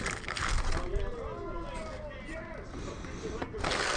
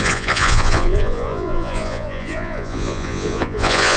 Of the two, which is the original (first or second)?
first